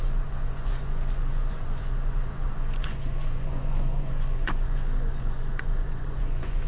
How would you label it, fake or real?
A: fake